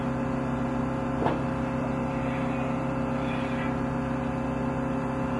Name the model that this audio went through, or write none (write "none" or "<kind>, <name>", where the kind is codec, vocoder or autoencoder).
none